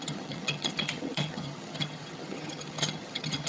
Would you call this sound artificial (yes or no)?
yes